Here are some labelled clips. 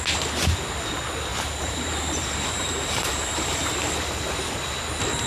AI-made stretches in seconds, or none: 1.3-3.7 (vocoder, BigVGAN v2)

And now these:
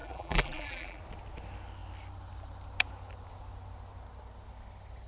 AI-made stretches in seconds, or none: 0.0-1.0 (vocoder, BigVGAN v2)

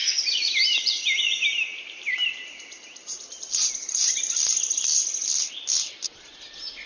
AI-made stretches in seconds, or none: 0.0-4.1 (vocoder, BigVGAN v2)

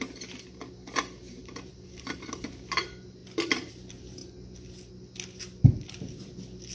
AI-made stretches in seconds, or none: 1.4-2.3 (vocoder, BigVGAN v2)

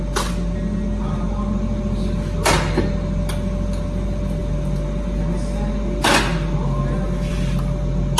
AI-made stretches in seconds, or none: none